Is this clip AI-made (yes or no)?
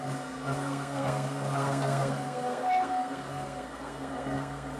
yes